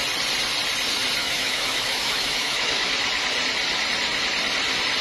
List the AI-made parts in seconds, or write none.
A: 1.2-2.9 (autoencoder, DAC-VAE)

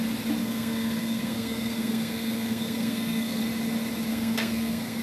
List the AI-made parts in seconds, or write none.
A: 0.4-3.4 (codec, SNAC); 4.1-5.0

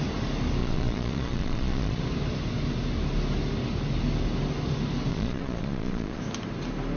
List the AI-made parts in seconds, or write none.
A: 0.6-2.0 (vocoder, Vocos); 5.1-6.2

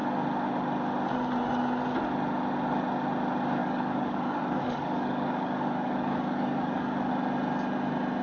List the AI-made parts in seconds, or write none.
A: 3.6-7.1 (codec, DAC)

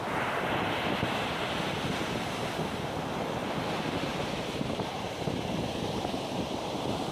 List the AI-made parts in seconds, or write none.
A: 3.4-7.1 (vocoder, BigVGAN v2)

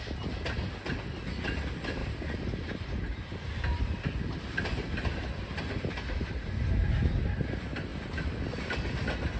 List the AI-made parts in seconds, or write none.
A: 2.0-4.2 (vocoder, BigVGAN v2); 7.9-8.9

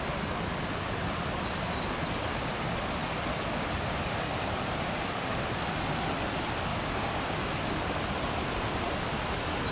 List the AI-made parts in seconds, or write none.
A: 6.7-7.3 (codec, DAC)

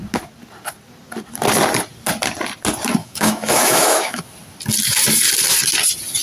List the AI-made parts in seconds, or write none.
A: 3.0-4.2 (autoencoder, DAC-VAE)